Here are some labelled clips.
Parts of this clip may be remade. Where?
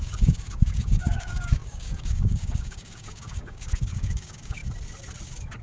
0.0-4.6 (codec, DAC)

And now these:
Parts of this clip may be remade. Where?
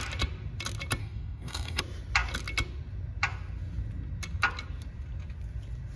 1.0-1.8 (codec, DAC)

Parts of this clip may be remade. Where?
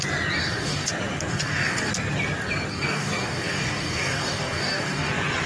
0.4-0.9 (codec, DAC); 1.3-1.9; 2.7-5.1